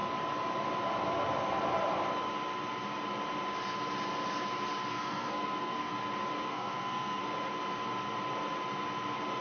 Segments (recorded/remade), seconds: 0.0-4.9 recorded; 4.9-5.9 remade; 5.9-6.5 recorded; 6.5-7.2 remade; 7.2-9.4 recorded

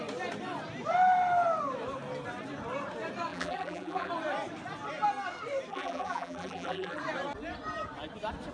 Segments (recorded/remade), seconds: 0.0-3.3 recorded; 3.3-4.1 remade; 4.1-5.7 recorded; 5.7-7.0 remade; 7.0-8.5 recorded